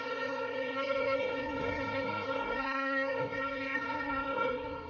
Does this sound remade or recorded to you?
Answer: remade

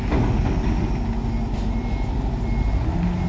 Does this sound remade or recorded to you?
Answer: recorded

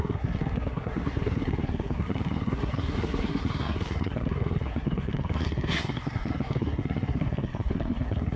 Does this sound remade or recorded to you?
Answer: remade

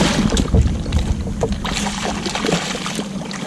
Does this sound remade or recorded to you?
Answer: recorded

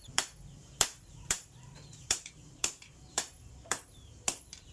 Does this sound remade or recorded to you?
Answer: remade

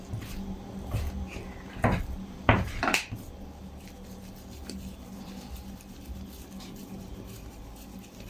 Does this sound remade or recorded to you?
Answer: remade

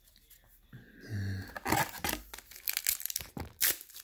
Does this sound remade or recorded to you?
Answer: recorded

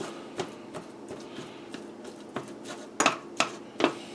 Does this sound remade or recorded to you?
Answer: recorded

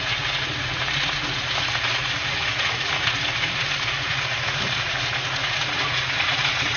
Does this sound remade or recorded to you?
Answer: remade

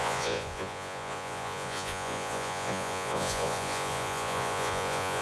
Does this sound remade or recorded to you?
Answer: remade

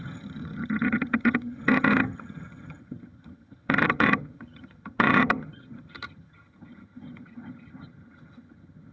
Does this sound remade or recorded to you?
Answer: remade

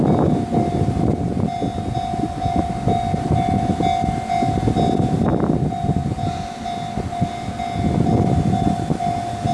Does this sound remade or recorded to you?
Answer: recorded